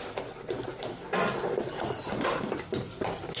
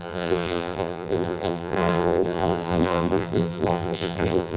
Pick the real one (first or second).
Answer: first